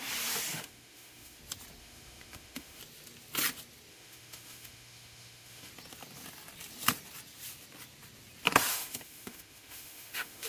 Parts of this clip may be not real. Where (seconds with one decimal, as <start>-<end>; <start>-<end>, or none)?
0.5-1.4; 1.8-2.8; 3.9-5.7; 8.7-10.5